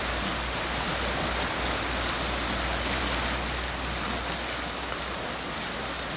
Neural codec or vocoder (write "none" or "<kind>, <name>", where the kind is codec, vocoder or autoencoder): none